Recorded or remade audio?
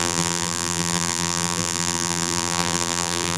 remade